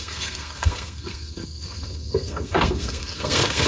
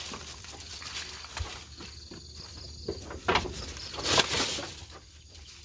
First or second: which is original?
second